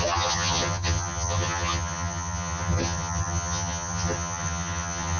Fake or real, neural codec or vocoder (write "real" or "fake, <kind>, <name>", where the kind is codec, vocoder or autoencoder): fake, vocoder, HiFi-GAN